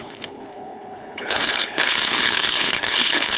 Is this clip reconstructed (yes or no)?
yes